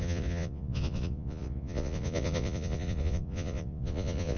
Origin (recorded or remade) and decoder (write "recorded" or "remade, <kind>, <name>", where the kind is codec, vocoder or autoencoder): remade, vocoder, Vocos